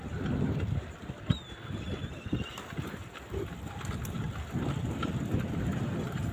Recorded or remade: remade